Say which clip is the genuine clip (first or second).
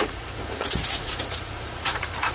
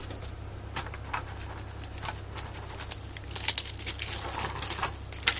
second